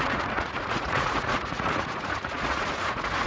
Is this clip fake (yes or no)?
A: yes